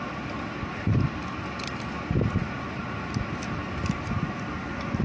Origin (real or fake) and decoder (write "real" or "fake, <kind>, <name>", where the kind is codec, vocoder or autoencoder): real